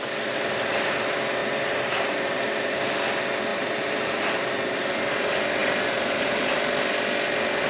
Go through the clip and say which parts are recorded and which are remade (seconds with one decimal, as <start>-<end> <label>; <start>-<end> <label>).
0.0-1.4 recorded; 1.4-2.9 remade; 2.9-3.5 recorded; 3.5-4.9 remade; 4.9-5.6 recorded; 5.6-6.5 remade; 6.5-7.7 recorded